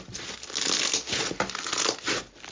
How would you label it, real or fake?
real